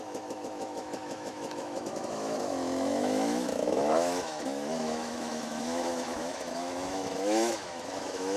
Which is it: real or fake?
fake